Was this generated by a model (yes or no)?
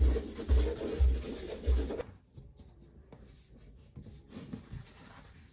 no